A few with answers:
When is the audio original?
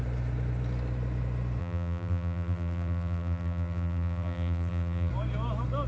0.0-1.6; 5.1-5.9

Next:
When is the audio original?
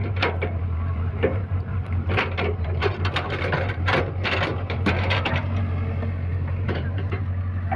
4.0-4.5; 5.6-6.3; 7.2-7.8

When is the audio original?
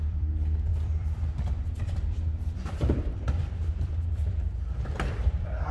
none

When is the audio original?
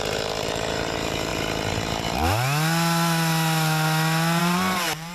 1.3-4.4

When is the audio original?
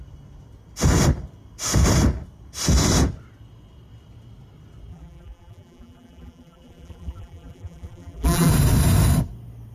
0.0-4.9; 8.5-9.7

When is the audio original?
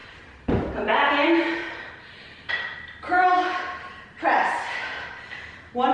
1.1-1.6; 2.2-3.9; 4.6-5.9